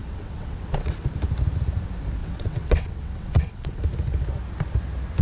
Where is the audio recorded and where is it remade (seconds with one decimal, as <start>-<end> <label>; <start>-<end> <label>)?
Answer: 0.0-1.1 remade; 1.1-2.2 recorded; 2.2-3.8 remade; 3.8-5.2 recorded